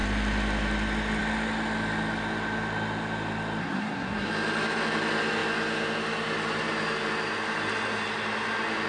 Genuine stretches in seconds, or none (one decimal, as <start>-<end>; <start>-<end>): 0.0-3.6; 4.3-8.9